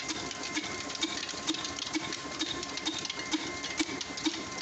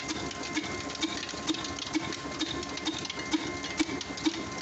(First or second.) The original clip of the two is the second